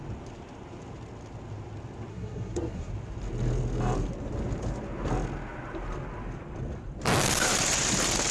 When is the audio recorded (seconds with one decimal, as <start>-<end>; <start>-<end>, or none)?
0.0-2.1; 2.9-8.3